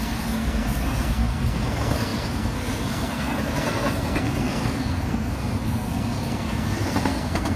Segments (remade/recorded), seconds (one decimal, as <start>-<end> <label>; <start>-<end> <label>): 0.0-7.6 remade